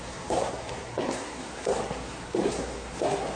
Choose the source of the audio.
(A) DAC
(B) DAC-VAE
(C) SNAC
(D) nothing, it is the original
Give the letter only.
C